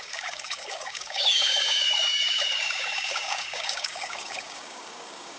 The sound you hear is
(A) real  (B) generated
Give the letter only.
B